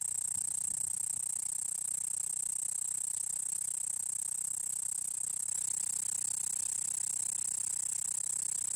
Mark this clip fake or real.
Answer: real